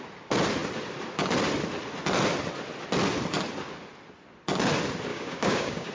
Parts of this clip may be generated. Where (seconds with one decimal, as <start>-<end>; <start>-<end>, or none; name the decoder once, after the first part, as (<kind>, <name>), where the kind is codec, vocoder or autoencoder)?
5.1-5.9 (codec, DAC)